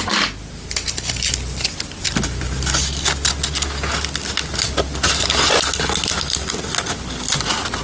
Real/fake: real